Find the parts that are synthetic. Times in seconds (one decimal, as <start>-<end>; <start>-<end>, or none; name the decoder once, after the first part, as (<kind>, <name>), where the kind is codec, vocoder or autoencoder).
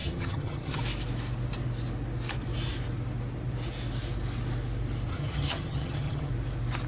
0.0-0.8 (vocoder, HiFi-GAN); 5.1-6.3